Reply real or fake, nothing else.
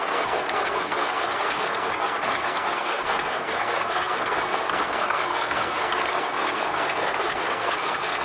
fake